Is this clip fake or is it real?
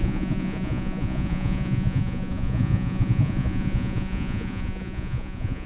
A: fake